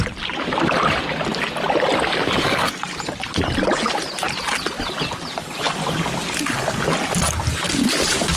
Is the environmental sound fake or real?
real